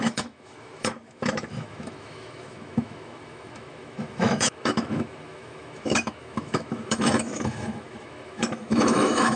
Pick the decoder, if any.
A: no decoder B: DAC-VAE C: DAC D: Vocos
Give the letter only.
B